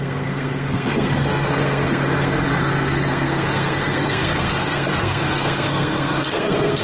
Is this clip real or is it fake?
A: fake